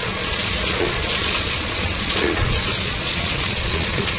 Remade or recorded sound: remade